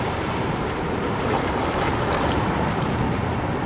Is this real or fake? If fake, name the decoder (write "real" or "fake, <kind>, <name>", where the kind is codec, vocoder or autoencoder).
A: fake, vocoder, BigVGAN v2